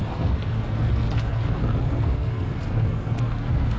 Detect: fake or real fake